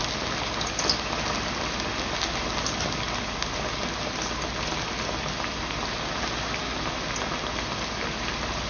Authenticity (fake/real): real